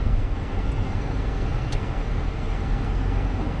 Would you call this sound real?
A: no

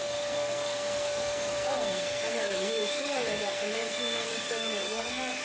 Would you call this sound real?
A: no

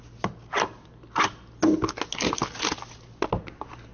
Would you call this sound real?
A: yes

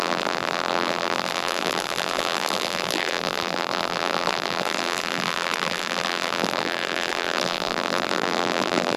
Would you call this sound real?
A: no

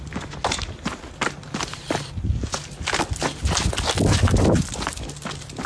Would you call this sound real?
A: yes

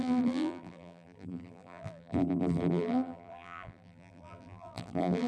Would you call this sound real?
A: no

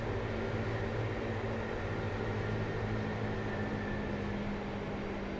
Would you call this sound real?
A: yes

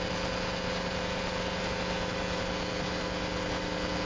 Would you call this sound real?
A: yes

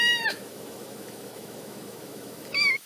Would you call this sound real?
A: no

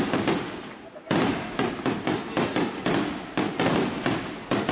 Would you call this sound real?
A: yes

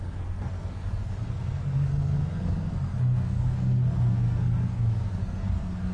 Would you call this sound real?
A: no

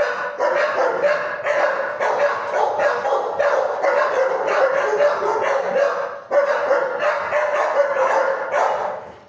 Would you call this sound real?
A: yes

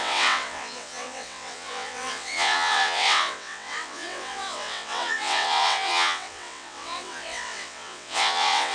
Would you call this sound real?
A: no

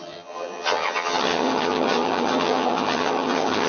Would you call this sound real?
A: no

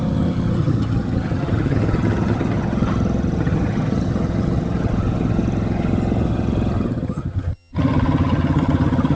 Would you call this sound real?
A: no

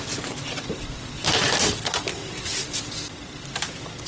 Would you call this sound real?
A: yes